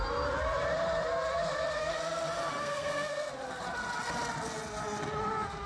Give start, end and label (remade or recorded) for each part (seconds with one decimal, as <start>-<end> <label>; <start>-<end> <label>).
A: 0.0-2.6 recorded; 2.6-3.3 remade; 3.3-5.7 recorded